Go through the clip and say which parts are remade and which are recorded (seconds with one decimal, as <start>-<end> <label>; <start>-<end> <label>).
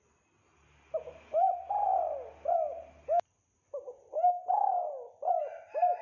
0.0-6.0 recorded